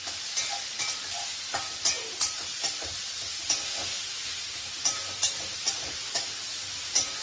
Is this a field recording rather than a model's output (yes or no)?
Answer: yes